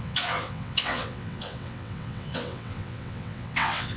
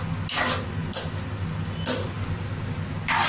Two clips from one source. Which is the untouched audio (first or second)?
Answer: second